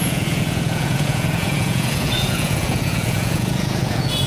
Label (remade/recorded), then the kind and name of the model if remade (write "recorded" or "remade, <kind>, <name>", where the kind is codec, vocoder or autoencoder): remade, vocoder, Vocos